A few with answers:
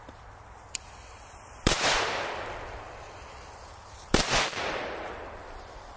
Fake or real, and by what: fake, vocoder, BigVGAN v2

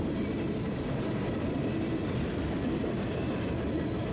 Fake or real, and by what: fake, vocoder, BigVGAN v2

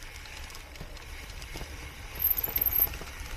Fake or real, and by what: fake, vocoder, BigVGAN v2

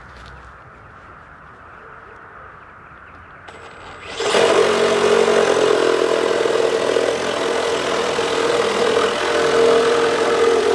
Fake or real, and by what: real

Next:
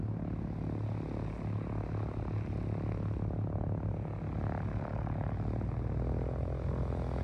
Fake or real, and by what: real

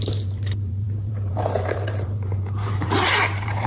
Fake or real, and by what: fake, vocoder, BigVGAN v2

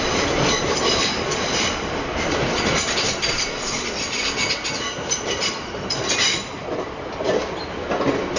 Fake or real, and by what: real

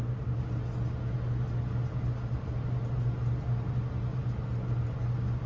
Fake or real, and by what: real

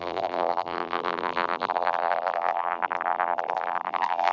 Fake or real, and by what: fake, vocoder, BigVGAN v2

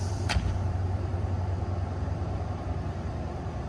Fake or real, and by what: fake, vocoder, BigVGAN v2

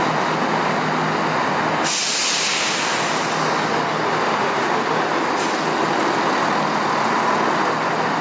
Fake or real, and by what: real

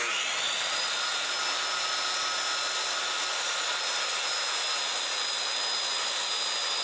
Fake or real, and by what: real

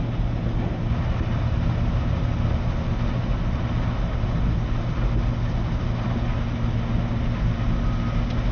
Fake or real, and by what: real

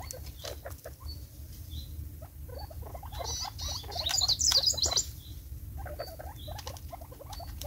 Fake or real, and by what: real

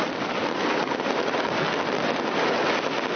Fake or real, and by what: real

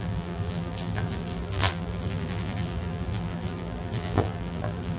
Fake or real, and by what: fake, vocoder, BigVGAN v2